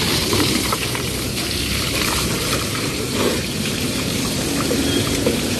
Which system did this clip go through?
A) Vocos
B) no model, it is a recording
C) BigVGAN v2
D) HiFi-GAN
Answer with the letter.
C